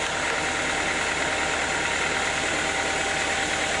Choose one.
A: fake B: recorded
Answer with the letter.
B